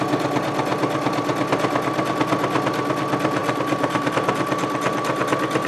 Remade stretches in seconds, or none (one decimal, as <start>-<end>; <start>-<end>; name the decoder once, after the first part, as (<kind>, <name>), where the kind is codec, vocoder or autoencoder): 3.4-4.1 (vocoder, BigVGAN v2)